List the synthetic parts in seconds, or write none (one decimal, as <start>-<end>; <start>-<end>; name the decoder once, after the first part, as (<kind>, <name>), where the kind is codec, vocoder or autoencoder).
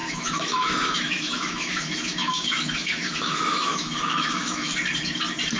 0.0-4.7 (autoencoder, DAC-VAE)